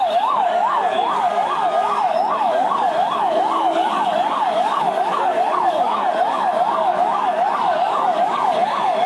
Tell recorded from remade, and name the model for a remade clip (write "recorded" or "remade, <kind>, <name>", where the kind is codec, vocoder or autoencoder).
remade, codec, DAC